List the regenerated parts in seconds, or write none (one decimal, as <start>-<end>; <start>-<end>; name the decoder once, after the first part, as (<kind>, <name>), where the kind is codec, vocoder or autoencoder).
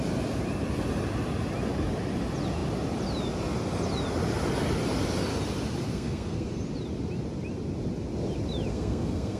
5.9-6.5 (codec, SNAC); 8.7-9.4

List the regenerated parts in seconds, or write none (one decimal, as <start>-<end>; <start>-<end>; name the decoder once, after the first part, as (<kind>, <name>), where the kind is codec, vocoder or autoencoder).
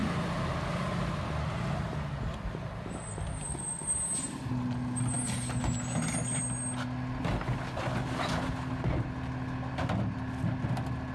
none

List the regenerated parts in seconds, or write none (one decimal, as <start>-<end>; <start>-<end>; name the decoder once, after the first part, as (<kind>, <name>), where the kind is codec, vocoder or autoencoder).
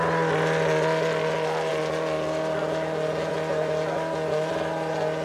none